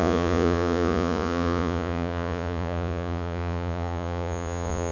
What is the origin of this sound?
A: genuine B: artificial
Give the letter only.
B